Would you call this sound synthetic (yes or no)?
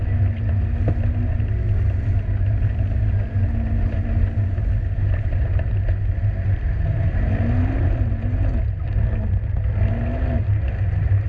no